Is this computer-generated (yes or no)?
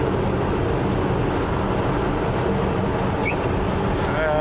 no